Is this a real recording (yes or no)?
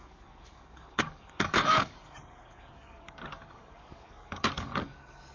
no